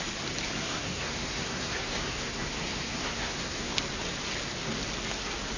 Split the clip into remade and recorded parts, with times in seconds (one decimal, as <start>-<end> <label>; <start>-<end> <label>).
0.0-0.6 recorded; 0.6-3.7 remade; 3.7-5.6 recorded